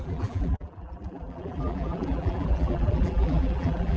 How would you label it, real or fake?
fake